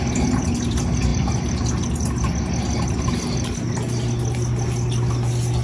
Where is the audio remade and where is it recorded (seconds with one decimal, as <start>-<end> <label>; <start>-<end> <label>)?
0.0-5.6 recorded

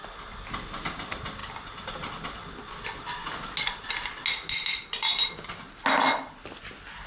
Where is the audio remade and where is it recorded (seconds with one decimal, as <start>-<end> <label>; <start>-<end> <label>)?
0.0-7.1 recorded

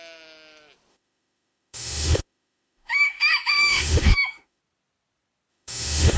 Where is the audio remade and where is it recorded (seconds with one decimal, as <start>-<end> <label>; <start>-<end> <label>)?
0.0-0.9 recorded; 0.9-4.6 remade; 4.6-5.5 recorded; 5.5-6.2 remade

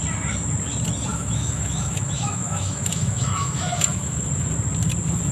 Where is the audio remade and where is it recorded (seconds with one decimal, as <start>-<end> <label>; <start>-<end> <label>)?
0.0-1.1 recorded; 1.1-4.3 remade; 4.3-5.3 recorded

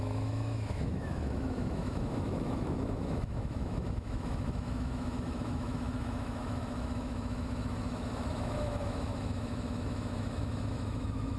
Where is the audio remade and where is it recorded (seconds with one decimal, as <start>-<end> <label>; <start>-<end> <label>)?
0.0-11.4 remade